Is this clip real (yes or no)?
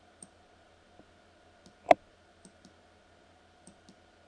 yes